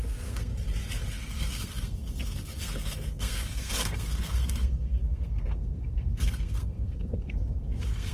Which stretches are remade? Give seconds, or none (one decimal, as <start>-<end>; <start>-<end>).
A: 0.0-0.5; 1.1-8.1